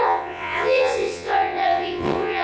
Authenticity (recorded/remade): remade